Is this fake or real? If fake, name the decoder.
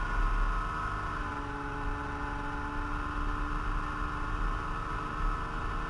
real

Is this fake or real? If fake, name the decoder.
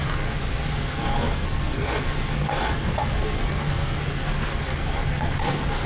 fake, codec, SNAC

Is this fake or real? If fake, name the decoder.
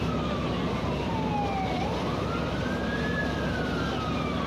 real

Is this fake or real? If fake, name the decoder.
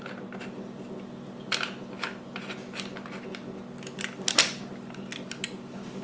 real